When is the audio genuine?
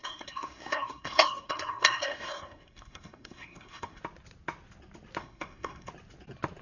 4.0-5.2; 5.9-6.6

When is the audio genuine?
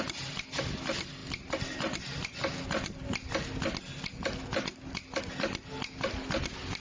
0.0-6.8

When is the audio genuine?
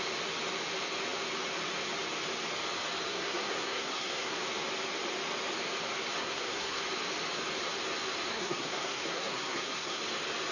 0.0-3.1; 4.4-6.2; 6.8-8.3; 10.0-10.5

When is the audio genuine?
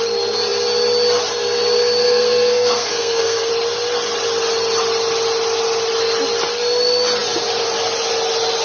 0.0-2.0; 3.5-8.6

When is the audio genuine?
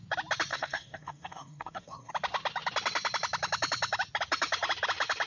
0.0-0.5; 2.1-5.3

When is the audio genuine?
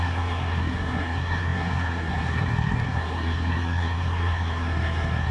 none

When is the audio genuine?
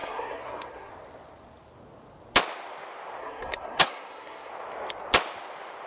0.9-3.2; 4.5-5.9